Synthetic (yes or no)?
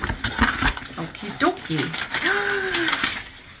no